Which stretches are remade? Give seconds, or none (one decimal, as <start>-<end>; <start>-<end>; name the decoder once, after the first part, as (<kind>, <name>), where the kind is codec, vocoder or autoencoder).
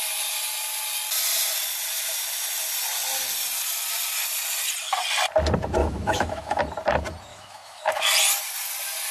5.8-6.6 (autoencoder, DAC-VAE); 7.3-8.0